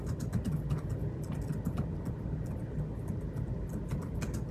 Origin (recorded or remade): recorded